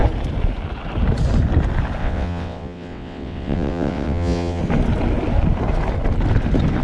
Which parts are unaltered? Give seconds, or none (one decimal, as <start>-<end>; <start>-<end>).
0.0-2.0; 4.6-6.8